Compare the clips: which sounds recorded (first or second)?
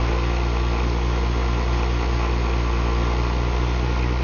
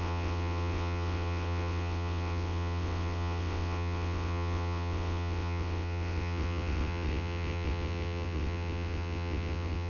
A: first